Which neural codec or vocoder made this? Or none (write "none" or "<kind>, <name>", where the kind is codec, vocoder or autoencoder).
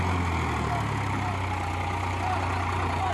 none